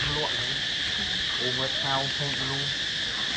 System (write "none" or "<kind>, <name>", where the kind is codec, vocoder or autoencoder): none